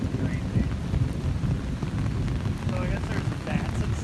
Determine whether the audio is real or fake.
real